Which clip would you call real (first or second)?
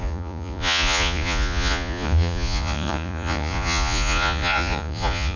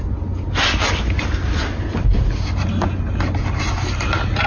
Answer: second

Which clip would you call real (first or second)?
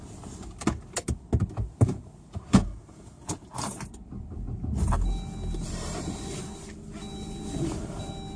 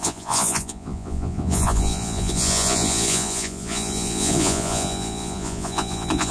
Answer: first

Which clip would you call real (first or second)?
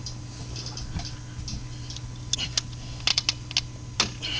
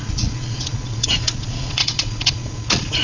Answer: first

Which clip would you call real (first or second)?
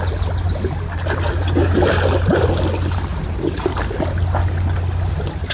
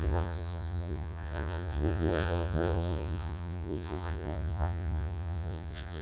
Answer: first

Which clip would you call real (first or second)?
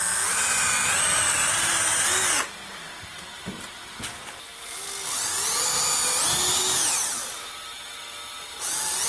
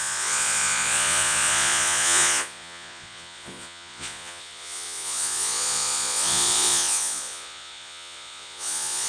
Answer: first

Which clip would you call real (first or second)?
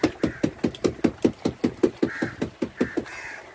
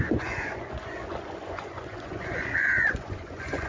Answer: first